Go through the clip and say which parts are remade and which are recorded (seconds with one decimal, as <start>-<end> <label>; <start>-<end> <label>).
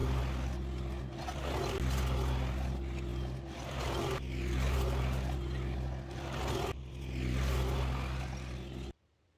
0.0-9.4 recorded